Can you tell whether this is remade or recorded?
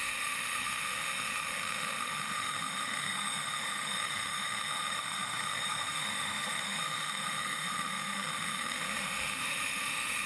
remade